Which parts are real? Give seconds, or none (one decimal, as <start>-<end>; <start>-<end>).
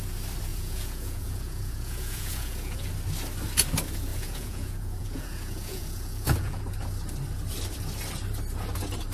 0.0-0.5; 2.9-4.1; 6.6-9.1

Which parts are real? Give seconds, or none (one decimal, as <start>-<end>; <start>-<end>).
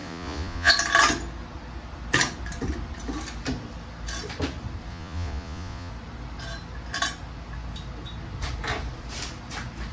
0.7-4.9; 5.9-9.9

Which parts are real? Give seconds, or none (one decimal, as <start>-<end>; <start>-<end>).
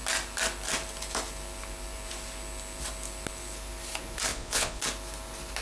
0.0-4.3; 4.8-5.6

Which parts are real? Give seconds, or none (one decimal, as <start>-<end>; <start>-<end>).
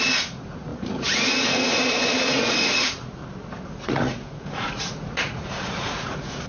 3.2-3.8